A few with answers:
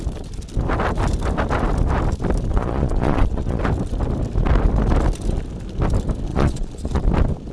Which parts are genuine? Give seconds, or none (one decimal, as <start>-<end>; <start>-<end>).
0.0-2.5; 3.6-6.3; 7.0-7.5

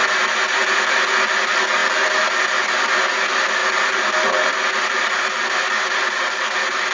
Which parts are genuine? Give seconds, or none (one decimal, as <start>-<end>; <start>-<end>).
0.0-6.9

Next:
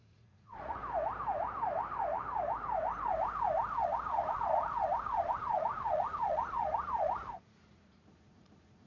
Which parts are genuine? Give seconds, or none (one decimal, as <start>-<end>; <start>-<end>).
0.8-3.8

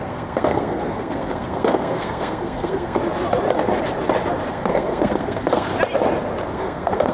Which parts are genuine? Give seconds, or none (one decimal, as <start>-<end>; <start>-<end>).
3.0-4.5; 5.7-6.5

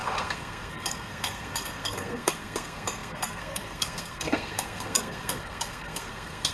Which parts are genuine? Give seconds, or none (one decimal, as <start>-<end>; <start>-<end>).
none

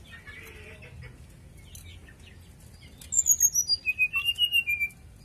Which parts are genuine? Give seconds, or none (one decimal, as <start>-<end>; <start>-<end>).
0.0-5.2

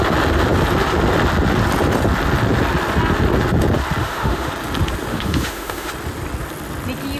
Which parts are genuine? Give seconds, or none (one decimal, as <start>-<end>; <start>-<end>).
0.0-4.0; 4.5-5.1; 5.9-7.2

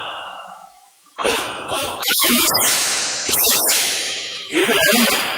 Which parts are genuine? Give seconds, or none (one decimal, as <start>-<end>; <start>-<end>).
4.6-5.4